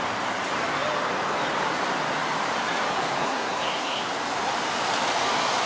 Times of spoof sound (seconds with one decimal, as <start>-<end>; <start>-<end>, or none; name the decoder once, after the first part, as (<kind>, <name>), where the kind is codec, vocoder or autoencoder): 3.2-4.0 (codec, SNAC)